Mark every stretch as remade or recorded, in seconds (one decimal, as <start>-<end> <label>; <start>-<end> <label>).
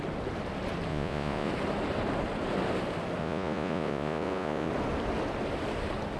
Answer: 0.0-0.9 recorded; 0.9-1.5 remade; 1.5-3.2 recorded; 3.2-4.7 remade; 4.7-6.2 recorded